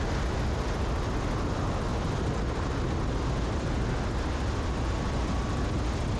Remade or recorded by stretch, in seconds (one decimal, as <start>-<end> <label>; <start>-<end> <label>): 0.0-6.2 recorded